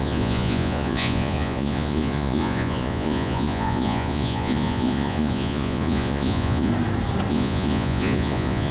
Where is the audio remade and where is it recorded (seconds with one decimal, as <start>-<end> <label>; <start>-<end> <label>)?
0.0-6.7 remade; 6.7-7.3 recorded; 7.3-8.7 remade